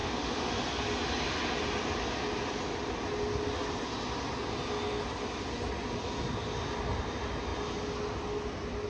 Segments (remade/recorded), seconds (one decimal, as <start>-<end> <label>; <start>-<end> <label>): 0.0-0.5 remade; 0.5-8.9 recorded